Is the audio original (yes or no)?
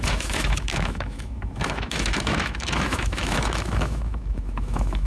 no